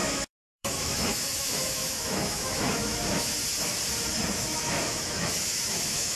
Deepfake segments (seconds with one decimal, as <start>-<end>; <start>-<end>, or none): 0.0-3.4; 4.3-6.2

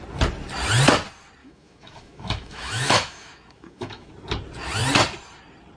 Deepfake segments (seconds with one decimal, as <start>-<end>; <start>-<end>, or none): 1.4-4.1